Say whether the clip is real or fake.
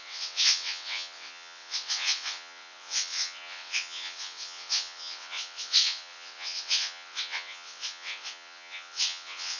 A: fake